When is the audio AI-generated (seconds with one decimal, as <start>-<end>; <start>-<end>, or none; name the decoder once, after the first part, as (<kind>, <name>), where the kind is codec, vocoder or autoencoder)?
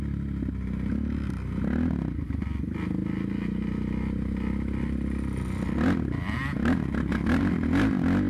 none